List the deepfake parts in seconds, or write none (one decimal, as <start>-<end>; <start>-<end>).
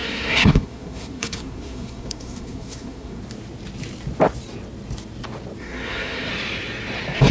0.0-3.2; 5.6-6.3